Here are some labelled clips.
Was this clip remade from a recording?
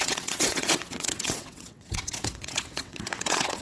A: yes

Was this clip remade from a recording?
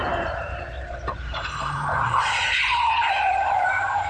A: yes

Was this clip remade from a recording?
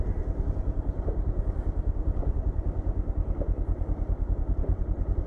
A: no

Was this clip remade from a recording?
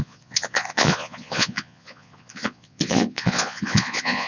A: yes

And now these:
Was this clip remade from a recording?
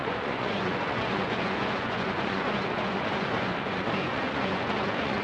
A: yes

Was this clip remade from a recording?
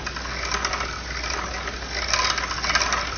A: no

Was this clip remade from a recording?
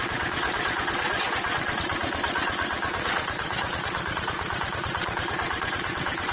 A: yes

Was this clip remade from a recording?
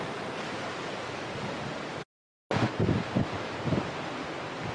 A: no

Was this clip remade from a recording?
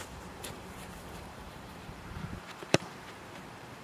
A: yes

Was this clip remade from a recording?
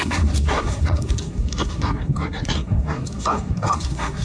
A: yes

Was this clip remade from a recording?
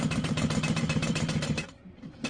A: yes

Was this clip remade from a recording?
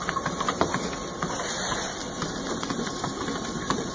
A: yes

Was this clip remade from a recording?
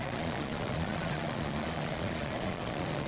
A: yes